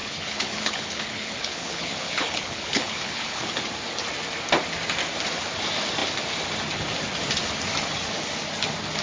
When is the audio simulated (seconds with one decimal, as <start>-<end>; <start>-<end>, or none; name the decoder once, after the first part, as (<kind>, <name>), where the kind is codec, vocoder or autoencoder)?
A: 0.0-3.5 (codec, HILCodec)